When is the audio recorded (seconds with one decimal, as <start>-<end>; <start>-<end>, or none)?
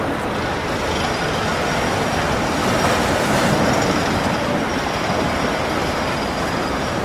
0.0-2.6; 4.2-5.8